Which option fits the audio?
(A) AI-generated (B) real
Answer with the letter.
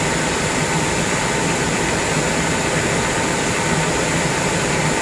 A